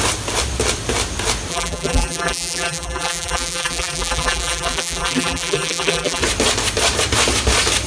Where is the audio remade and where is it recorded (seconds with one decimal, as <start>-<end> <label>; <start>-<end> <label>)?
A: 0.0-1.5 recorded; 1.5-6.2 remade; 6.2-7.9 recorded